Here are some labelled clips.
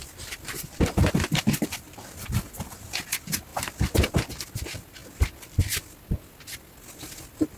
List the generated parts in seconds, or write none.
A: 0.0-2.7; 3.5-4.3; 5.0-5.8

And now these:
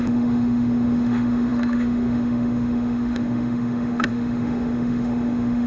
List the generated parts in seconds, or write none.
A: 0.0-5.7

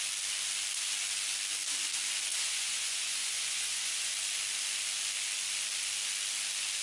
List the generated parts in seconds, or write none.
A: 2.3-4.1

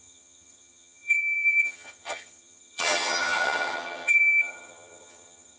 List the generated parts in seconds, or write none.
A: 0.0-5.6

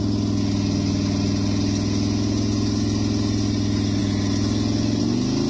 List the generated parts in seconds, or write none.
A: none

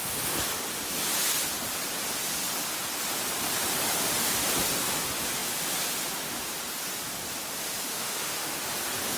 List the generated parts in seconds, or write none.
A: 7.9-8.5